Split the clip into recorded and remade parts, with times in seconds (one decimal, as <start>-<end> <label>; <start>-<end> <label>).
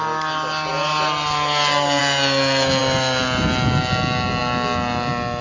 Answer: 0.0-5.4 recorded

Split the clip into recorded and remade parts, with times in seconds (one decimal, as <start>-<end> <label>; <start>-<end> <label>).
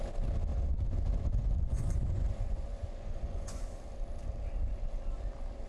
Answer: 0.0-0.5 recorded; 0.5-3.6 remade; 3.6-5.7 recorded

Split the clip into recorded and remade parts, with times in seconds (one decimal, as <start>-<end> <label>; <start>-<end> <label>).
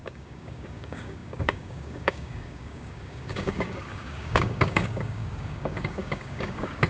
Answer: 0.0-6.9 remade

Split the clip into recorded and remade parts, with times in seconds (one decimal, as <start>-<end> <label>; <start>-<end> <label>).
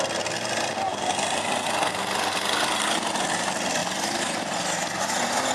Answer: 0.0-5.5 recorded